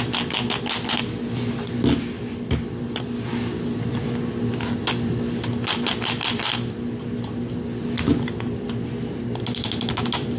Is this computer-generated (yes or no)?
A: no